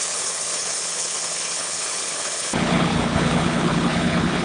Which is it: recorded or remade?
remade